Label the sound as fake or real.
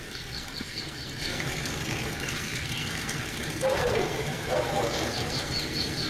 fake